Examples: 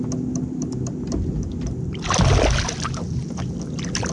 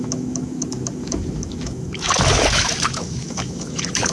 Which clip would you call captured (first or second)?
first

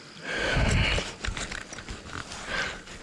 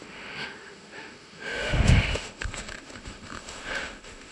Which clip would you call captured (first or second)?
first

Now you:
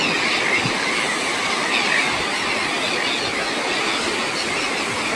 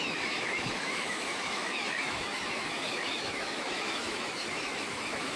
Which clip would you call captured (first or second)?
first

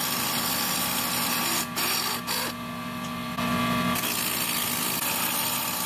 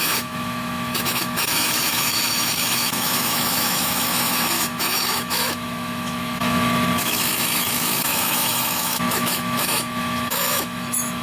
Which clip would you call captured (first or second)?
first